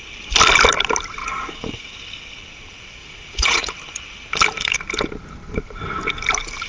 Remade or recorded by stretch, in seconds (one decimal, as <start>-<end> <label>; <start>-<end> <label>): 0.0-1.2 recorded; 1.2-1.9 remade; 1.9-3.0 recorded; 3.0-3.7 remade; 3.7-6.7 recorded